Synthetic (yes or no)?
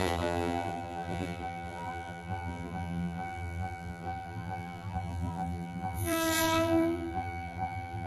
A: yes